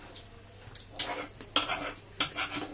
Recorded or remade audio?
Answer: recorded